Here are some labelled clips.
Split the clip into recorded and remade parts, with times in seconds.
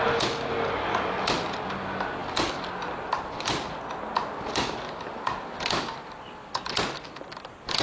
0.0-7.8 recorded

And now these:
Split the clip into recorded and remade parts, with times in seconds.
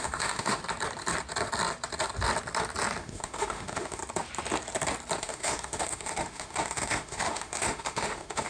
0.0-0.6 remade; 0.6-3.0 recorded; 3.0-4.0 remade; 4.0-5.2 recorded; 5.2-8.5 remade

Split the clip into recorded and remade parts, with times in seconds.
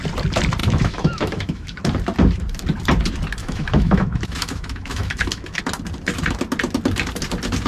0.0-0.6 recorded; 0.6-1.8 remade; 1.8-3.4 recorded; 3.4-5.6 remade; 5.6-7.7 recorded